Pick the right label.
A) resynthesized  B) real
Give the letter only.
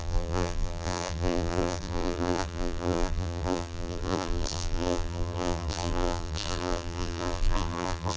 A